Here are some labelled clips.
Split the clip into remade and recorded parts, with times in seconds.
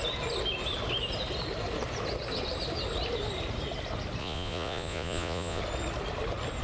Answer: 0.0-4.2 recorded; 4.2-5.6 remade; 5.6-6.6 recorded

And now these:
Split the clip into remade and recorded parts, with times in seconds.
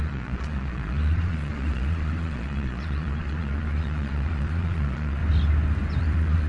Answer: 0.0-5.2 remade; 5.2-6.0 recorded; 6.0-6.5 remade